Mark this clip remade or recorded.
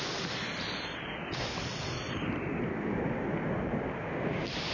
recorded